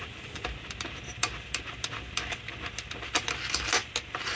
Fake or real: real